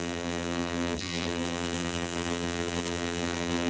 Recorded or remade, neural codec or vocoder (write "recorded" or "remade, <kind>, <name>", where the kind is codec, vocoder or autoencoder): remade, vocoder, BigVGAN v2